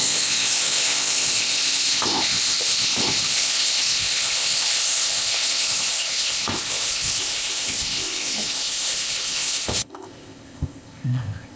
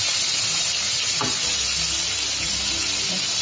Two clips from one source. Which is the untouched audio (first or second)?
second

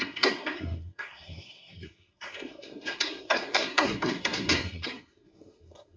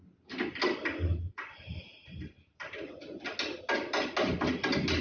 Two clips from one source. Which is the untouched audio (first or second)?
second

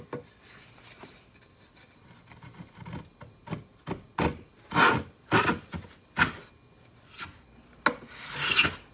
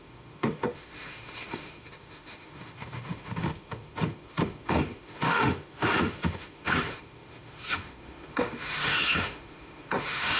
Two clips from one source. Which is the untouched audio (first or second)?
first